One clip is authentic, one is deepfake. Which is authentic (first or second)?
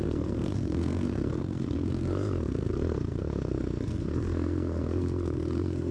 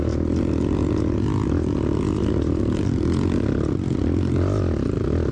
second